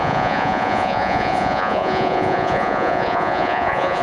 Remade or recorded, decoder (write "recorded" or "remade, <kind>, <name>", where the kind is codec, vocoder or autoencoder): remade, vocoder, Vocos